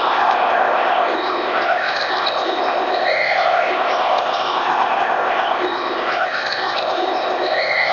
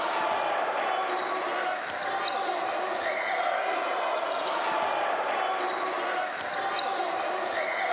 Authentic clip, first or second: second